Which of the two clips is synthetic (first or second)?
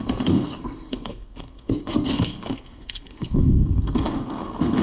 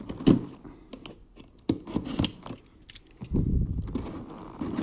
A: first